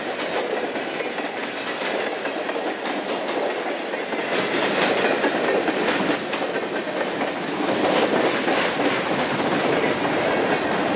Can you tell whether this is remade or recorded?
recorded